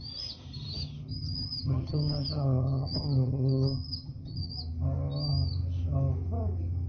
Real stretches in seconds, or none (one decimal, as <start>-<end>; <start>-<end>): 0.0-1.1; 4.5-6.9